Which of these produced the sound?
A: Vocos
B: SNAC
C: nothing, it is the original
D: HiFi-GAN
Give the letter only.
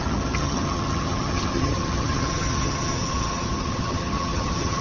D